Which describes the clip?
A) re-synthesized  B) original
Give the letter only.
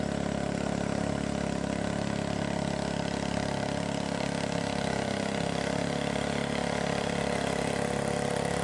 B